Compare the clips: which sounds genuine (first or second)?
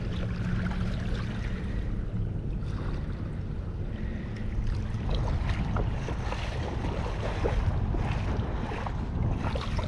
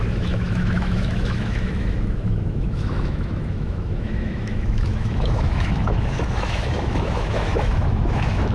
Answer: first